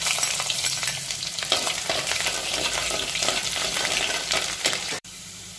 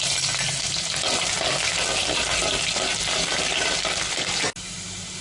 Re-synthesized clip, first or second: first